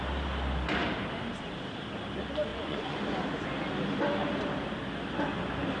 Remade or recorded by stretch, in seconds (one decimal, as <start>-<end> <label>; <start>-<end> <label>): 0.0-2.5 recorded; 2.5-3.0 remade; 3.0-5.8 recorded